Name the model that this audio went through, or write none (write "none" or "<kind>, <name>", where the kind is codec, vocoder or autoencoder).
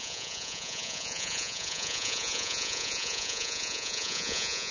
vocoder, Vocos